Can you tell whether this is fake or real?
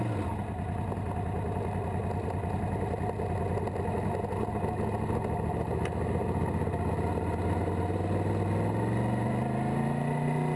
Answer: real